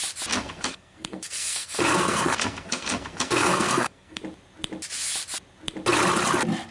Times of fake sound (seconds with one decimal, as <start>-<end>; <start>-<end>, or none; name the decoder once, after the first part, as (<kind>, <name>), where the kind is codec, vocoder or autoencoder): 0.4-4.2 (codec, SNAC)